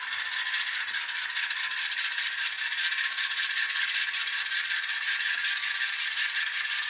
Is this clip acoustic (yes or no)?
yes